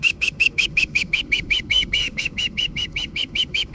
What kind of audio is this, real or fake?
fake